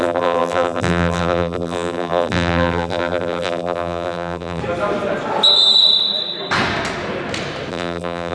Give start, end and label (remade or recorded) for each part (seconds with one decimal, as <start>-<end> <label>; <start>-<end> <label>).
0.0-4.6 remade; 4.6-7.7 recorded; 7.7-8.3 remade